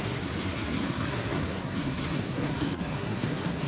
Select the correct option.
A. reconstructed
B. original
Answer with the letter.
A